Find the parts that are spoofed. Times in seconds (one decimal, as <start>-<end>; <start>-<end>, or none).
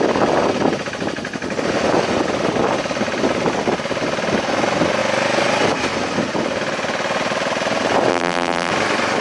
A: 8.1-8.7